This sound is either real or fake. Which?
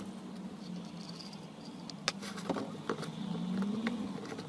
real